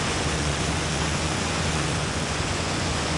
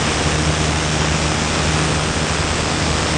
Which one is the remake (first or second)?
first